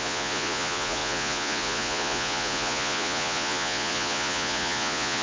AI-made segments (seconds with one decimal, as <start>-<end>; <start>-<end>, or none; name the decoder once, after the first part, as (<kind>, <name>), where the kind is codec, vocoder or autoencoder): 0.0-5.2 (vocoder, Vocos)